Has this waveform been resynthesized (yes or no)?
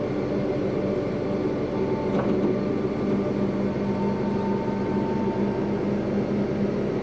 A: no